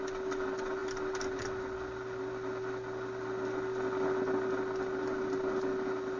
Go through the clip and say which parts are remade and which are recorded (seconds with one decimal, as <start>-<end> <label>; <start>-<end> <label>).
0.0-6.2 recorded

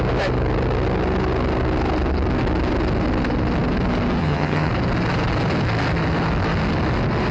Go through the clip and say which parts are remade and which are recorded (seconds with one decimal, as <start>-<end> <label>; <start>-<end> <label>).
0.0-4.2 recorded; 4.2-4.7 remade; 4.7-7.3 recorded

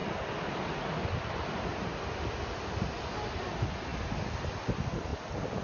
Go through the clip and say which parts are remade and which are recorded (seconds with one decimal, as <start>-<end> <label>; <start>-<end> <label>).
0.0-5.6 recorded

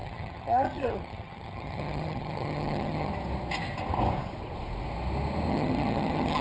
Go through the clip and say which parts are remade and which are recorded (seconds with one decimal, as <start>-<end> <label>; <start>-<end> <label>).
0.0-3.1 remade; 3.1-5.5 recorded; 5.5-6.4 remade

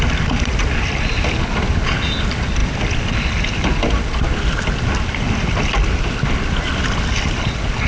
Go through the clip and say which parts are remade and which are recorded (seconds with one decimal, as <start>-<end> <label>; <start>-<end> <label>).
0.0-7.9 recorded

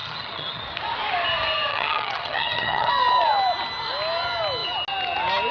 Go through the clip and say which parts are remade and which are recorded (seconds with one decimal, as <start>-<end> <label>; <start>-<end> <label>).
0.0-0.6 remade; 0.6-1.7 recorded; 1.7-2.9 remade; 2.9-5.5 recorded